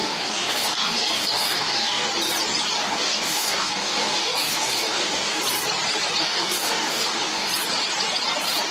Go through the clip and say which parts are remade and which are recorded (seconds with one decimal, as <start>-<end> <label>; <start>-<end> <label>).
0.0-2.1 remade; 2.1-2.8 recorded; 2.8-5.4 remade; 5.4-6.2 recorded; 6.2-7.5 remade; 7.5-8.7 recorded